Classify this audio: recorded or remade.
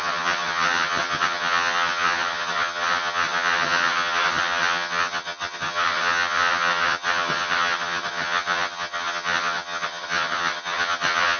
remade